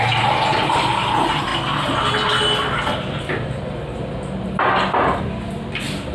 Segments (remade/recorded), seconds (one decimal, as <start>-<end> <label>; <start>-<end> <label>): 0.0-6.1 recorded